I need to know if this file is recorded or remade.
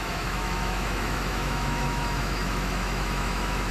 remade